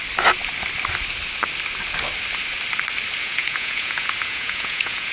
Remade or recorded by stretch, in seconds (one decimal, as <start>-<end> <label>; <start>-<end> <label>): 0.0-3.2 recorded; 3.2-5.1 remade